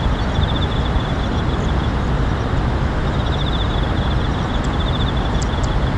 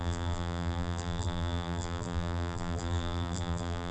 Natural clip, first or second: first